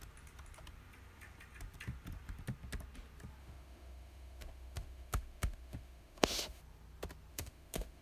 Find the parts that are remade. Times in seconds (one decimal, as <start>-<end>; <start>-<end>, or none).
3.4-6.6; 7.3-8.0